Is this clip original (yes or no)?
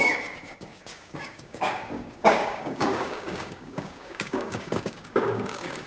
no